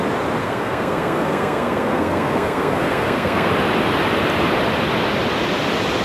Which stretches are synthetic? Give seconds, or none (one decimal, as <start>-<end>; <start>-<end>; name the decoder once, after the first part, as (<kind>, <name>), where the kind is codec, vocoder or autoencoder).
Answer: 0.4-3.5 (codec, SNAC)